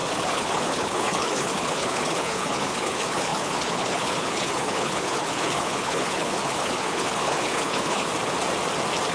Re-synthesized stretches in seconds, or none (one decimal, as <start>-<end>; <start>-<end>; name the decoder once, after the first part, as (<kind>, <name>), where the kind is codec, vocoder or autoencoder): 0.0-8.1 (codec, HILCodec)